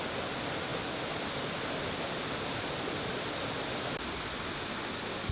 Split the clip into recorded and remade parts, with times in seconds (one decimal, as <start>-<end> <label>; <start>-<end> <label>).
0.0-5.3 recorded